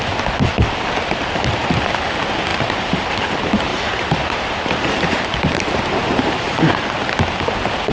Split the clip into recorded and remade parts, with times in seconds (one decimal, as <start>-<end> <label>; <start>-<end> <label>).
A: 0.0-2.5 recorded; 2.5-3.1 remade; 3.1-3.7 recorded; 3.7-6.5 remade; 6.5-7.9 recorded